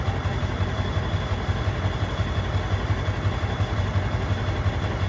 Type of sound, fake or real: real